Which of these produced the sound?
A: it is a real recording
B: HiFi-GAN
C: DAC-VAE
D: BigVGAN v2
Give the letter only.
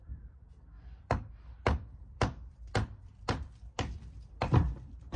D